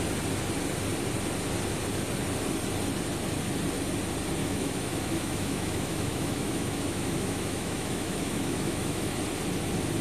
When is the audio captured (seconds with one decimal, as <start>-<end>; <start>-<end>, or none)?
0.0-4.4; 9.2-10.0